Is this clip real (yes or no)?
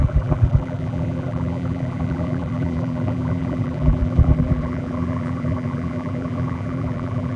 no